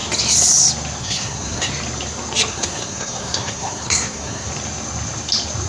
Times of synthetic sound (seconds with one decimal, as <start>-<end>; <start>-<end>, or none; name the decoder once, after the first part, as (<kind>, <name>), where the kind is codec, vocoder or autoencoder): 1.0-1.7 (codec, SNAC); 2.5-4.5